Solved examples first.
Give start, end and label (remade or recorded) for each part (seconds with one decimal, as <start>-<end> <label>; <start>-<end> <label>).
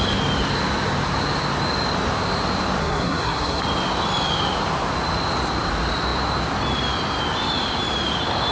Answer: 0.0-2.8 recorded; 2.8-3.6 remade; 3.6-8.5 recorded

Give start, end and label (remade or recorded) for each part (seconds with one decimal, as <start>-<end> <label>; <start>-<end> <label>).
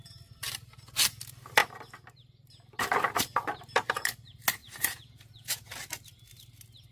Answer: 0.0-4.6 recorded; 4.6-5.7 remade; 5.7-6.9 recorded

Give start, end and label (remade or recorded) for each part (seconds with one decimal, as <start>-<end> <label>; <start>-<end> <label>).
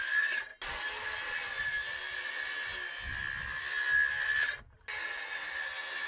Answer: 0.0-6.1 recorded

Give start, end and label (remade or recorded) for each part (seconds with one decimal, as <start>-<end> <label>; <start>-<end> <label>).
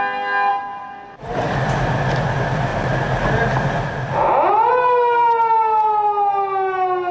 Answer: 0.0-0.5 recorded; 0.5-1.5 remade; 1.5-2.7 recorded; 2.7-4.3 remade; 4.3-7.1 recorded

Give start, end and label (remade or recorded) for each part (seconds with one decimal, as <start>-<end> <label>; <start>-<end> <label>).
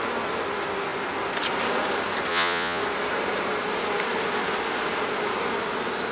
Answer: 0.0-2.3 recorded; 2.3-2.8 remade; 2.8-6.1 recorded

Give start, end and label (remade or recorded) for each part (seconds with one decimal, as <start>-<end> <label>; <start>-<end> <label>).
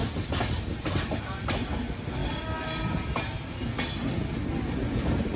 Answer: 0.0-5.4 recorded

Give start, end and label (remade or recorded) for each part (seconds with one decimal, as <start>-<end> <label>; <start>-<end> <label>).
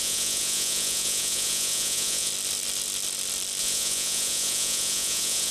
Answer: 0.0-2.3 remade; 2.3-3.6 recorded; 3.6-5.5 remade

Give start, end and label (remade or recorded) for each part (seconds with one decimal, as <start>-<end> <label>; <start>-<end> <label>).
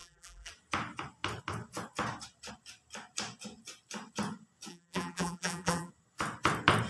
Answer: 0.0-0.5 remade; 0.5-4.7 recorded; 4.7-5.9 remade; 5.9-6.9 recorded